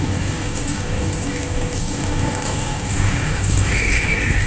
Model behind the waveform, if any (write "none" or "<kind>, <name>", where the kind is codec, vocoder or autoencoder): codec, DAC